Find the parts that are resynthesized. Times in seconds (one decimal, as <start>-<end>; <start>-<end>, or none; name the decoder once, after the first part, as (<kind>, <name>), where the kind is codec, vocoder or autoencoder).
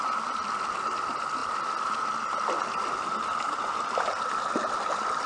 none